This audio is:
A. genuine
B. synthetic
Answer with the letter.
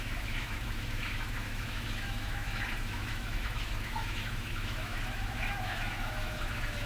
B